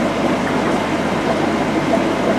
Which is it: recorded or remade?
recorded